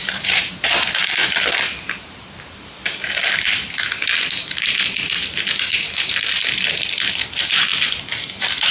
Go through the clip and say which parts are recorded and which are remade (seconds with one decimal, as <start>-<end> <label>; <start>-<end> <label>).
0.0-1.2 remade; 1.2-5.5 recorded; 5.5-6.4 remade; 6.4-7.1 recorded; 7.1-7.7 remade; 7.7-8.7 recorded